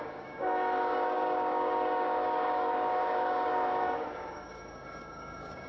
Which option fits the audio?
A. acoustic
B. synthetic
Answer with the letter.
B